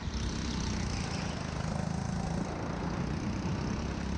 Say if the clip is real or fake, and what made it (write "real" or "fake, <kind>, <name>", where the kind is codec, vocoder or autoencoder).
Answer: real